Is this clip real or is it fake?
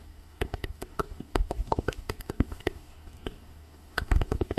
fake